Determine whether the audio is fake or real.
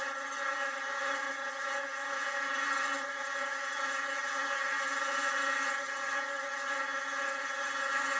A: fake